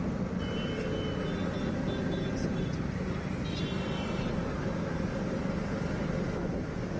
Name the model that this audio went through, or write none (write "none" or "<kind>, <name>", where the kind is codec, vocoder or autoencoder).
none